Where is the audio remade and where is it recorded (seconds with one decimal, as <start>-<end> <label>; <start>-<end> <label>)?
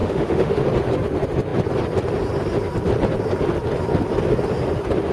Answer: 0.0-0.6 remade; 0.6-5.1 recorded